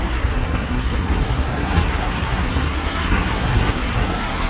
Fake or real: fake